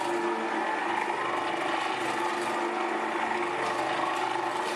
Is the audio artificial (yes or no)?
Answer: no